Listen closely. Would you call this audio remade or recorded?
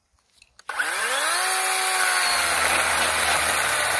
recorded